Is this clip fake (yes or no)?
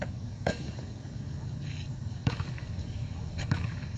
yes